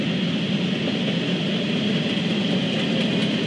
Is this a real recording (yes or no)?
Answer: yes